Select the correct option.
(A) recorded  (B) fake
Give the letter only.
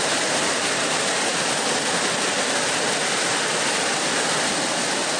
A